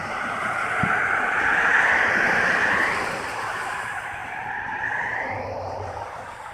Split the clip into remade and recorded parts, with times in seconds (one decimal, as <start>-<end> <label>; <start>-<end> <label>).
0.0-6.5 remade